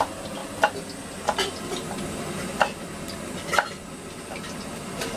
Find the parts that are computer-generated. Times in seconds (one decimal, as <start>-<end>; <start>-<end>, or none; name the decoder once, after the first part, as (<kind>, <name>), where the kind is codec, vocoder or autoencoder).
none